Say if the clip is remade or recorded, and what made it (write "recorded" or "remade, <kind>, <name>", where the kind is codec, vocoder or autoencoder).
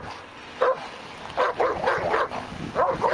recorded